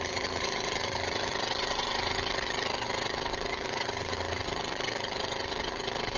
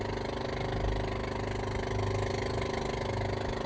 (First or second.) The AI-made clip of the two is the first